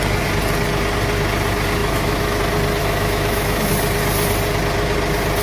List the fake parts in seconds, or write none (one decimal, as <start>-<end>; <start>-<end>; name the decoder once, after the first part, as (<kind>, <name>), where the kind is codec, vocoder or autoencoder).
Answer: 1.8-2.4 (autoencoder, DAC-VAE); 2.8-3.7